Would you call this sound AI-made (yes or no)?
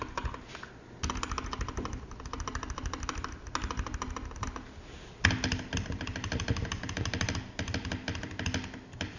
no